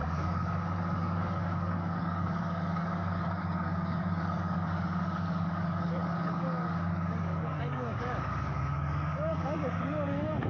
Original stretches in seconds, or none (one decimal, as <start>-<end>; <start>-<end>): none